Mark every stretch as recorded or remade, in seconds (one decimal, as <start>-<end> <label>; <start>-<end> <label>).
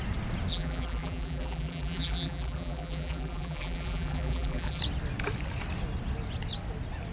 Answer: 0.0-0.5 recorded; 0.5-4.8 remade; 4.8-7.1 recorded